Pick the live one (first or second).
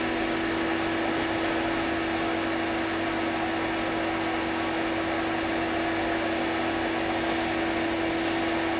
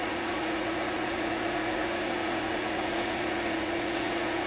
first